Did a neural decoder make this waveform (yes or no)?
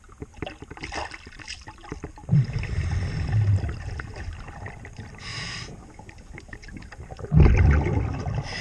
no